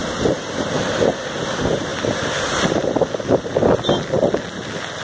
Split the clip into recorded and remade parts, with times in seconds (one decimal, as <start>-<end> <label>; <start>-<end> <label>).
0.0-5.0 recorded